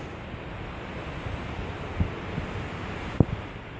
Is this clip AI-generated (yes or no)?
no